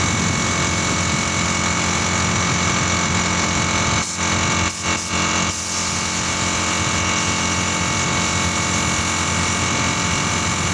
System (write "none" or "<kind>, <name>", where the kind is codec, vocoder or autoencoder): none